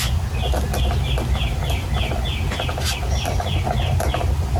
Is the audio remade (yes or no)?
no